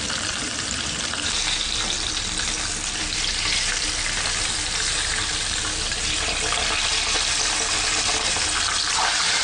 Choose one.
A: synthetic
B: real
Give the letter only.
A